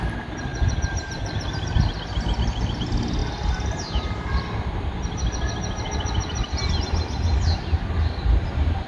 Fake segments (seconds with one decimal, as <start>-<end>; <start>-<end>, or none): none